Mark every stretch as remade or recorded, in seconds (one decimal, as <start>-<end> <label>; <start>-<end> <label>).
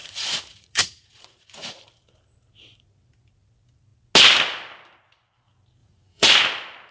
0.0-1.8 remade; 1.8-5.8 recorded; 5.8-6.3 remade; 6.3-6.9 recorded